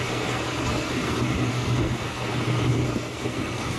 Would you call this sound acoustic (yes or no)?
no